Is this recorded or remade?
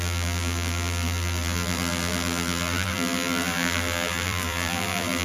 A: remade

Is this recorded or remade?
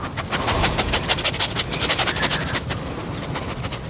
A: recorded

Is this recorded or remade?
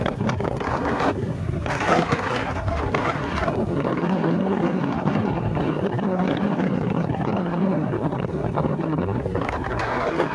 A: remade